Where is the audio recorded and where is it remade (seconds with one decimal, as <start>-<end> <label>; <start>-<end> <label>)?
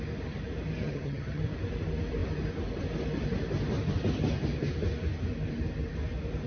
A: 0.0-0.8 recorded; 0.8-1.4 remade; 1.4-6.5 recorded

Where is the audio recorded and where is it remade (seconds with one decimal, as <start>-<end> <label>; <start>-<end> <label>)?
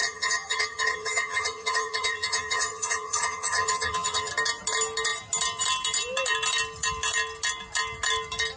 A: 0.0-4.3 remade; 4.3-8.6 recorded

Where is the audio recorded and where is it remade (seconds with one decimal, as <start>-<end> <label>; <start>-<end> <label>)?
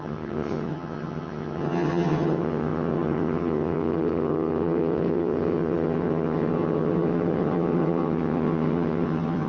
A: 0.0-9.5 remade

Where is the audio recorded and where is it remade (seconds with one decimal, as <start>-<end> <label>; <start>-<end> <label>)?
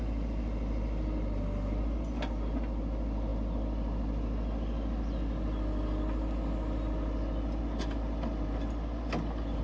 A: 0.0-9.6 recorded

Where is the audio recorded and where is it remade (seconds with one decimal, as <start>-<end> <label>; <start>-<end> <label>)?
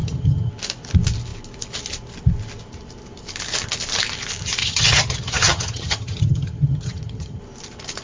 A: 0.0-0.5 remade; 0.5-4.6 recorded; 4.6-7.4 remade; 7.4-8.0 recorded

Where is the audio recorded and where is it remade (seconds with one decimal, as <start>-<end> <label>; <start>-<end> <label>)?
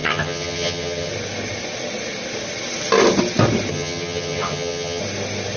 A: 0.0-1.1 remade; 1.1-3.7 recorded; 3.7-5.0 remade; 5.0-5.6 recorded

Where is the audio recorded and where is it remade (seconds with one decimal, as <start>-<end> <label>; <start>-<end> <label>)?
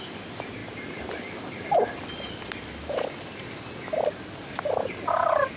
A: 0.0-5.6 recorded